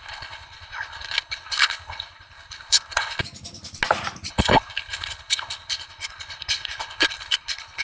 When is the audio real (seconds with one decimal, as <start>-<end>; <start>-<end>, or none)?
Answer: 3.2-4.3